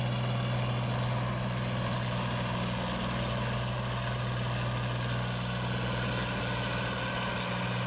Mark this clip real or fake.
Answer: real